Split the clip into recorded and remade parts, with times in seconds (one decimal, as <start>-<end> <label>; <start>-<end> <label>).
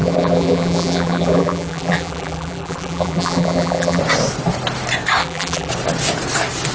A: 0.0-4.0 remade; 4.0-5.2 recorded; 5.2-5.7 remade; 5.7-6.7 recorded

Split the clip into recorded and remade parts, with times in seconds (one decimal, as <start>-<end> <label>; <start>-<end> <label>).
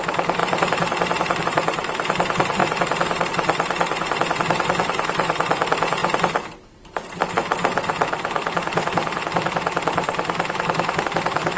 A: 0.0-0.4 remade; 0.4-1.4 recorded; 1.4-6.0 remade; 6.0-11.0 recorded; 11.0-11.6 remade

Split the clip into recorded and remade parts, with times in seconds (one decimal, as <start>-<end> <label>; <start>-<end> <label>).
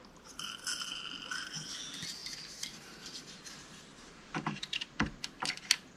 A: 0.0-2.2 recorded; 2.2-5.2 remade; 5.2-6.0 recorded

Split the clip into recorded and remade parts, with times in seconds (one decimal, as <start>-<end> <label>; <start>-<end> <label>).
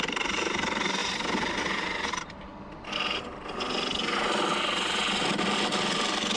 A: 0.0-1.0 remade; 1.0-1.6 recorded; 1.6-2.5 remade; 2.5-6.4 recorded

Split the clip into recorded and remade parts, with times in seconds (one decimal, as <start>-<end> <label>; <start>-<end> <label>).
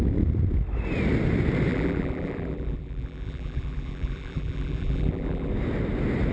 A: 0.0-1.7 recorded; 1.7-5.5 remade; 5.5-6.3 recorded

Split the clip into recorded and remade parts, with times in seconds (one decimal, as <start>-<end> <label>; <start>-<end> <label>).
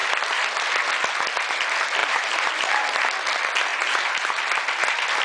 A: 0.0-2.0 recorded; 2.0-2.5 remade; 2.5-3.7 recorded; 3.7-4.4 remade; 4.4-5.2 recorded